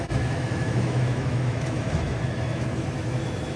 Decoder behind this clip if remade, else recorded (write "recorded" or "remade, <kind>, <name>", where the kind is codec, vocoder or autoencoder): remade, autoencoder, DAC-VAE